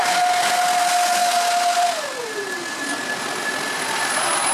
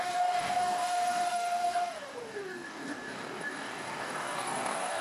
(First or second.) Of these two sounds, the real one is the first